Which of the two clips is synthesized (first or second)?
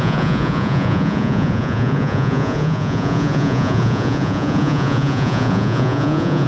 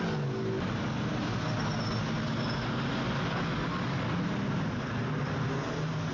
first